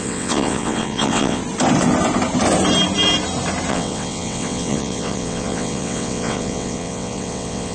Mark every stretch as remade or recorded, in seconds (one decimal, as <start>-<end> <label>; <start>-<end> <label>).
0.0-1.4 remade; 1.4-3.7 recorded; 3.7-7.7 remade